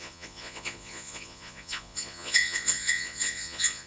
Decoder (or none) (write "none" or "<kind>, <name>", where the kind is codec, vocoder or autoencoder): vocoder, Vocos